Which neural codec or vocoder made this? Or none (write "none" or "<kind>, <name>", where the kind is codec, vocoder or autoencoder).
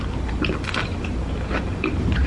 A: vocoder, BigVGAN v2